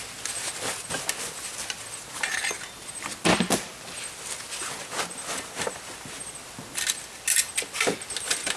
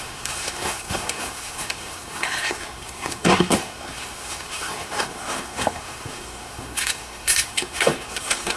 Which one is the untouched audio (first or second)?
first